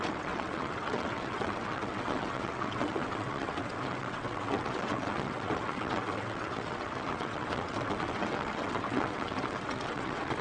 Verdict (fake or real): fake